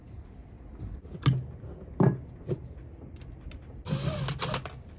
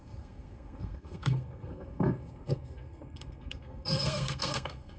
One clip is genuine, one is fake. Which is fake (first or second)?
second